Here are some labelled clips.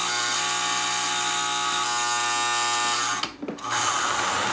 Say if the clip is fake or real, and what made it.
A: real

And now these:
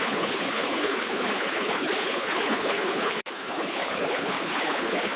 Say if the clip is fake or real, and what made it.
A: fake, codec, HILCodec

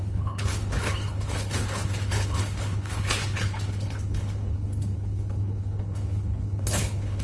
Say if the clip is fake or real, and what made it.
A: fake, codec, HILCodec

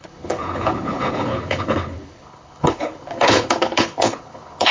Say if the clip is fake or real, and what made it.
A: fake, codec, HILCodec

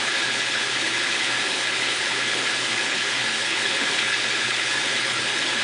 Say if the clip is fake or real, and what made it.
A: fake, codec, HILCodec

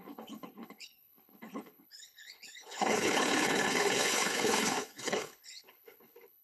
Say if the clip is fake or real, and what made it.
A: fake, codec, HILCodec